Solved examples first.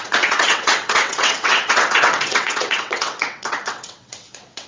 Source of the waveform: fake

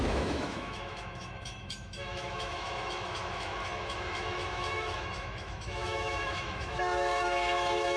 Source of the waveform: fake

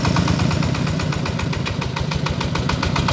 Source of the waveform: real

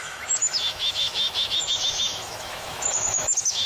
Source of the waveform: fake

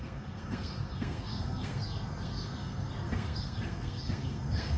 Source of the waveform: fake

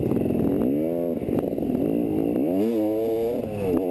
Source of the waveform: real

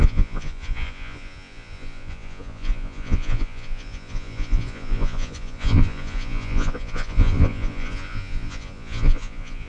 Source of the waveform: fake